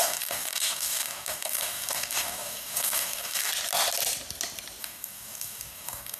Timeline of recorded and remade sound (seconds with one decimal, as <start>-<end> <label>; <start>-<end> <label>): 0.0-3.5 remade; 3.5-4.8 recorded; 4.8-6.2 remade